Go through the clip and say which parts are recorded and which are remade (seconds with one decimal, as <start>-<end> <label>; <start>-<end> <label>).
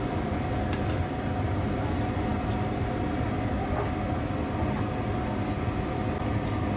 0.0-6.8 recorded